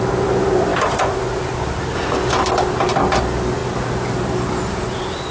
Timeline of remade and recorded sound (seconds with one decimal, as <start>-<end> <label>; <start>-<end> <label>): 0.0-5.3 recorded